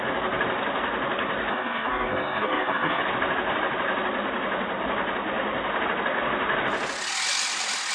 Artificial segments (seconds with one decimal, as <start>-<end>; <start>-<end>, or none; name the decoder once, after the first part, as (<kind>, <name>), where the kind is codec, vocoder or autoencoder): 1.5-3.0 (codec, SNAC)